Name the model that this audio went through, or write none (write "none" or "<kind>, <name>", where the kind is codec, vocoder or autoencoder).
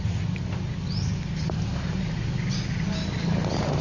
none